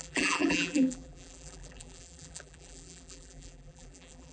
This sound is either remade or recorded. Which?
remade